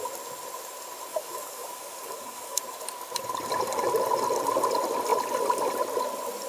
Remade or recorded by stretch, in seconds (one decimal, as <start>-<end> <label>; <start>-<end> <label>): 0.0-1.1 recorded; 1.1-2.6 remade; 2.6-6.5 recorded

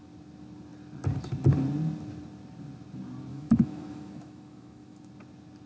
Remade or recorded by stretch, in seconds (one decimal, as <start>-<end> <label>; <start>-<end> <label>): 0.0-3.3 recorded; 3.3-5.1 remade; 5.1-5.7 recorded

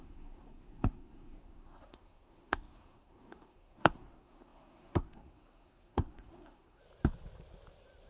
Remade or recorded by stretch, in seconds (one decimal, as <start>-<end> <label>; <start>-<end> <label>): 0.0-6.8 remade; 6.8-8.1 recorded

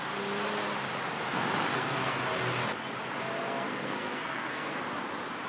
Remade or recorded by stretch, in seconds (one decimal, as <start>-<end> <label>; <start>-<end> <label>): 0.0-1.7 recorded; 1.7-2.2 remade; 2.2-3.4 recorded; 3.4-4.8 remade; 4.8-5.5 recorded

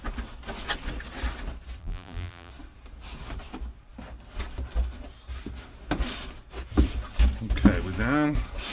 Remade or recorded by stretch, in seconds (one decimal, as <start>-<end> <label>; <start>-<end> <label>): 0.0-1.8 recorded; 1.8-2.5 remade; 2.5-8.7 recorded

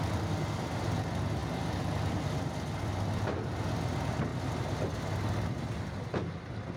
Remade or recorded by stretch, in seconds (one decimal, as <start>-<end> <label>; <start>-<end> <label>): 0.0-6.8 recorded

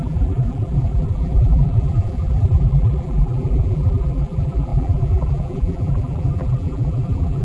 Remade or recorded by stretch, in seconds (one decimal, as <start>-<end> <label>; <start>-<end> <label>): 0.0-7.4 remade

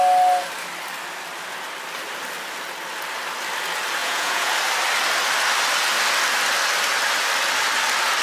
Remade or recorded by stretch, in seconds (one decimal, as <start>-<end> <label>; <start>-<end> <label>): 0.0-4.0 recorded; 4.0-4.5 remade; 4.5-8.2 recorded